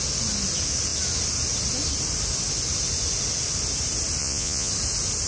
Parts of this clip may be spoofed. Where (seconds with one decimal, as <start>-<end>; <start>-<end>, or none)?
4.2-4.7